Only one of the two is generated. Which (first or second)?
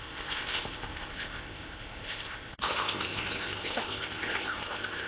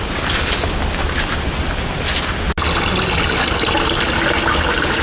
first